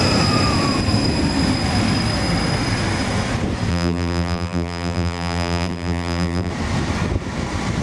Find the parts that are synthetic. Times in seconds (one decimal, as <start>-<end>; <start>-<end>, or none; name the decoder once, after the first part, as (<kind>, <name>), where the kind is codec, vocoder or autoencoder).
3.7-6.5 (vocoder, BigVGAN v2)